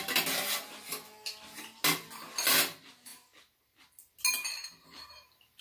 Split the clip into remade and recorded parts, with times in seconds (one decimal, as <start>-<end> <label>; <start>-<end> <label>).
0.0-5.6 recorded